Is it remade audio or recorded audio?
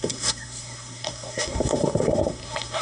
remade